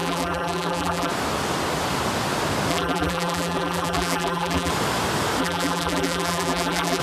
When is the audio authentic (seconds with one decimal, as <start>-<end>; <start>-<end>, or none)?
1.1-2.7; 4.7-5.4